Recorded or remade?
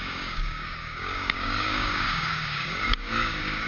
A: remade